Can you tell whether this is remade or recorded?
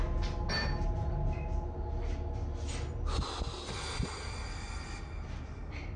recorded